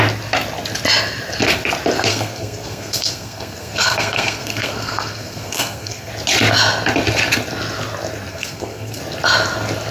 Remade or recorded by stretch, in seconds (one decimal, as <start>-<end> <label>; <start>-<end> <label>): 0.0-2.1 recorded; 2.1-6.1 remade; 6.1-8.3 recorded; 8.3-9.0 remade; 9.0-9.9 recorded